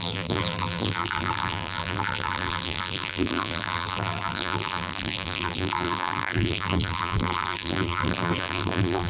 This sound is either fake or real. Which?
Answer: fake